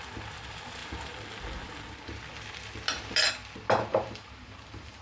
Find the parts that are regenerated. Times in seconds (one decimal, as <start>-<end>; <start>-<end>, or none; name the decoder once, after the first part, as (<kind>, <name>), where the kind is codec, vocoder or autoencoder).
3.9-5.0 (vocoder, BigVGAN v2)